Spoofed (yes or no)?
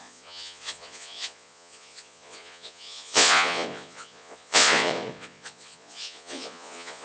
yes